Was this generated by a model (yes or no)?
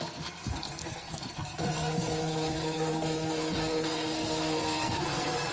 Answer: yes